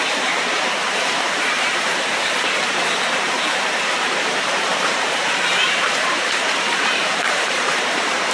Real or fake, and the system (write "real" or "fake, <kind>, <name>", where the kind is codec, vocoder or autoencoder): fake, vocoder, BigVGAN v2